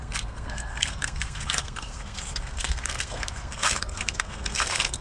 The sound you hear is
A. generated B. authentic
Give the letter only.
A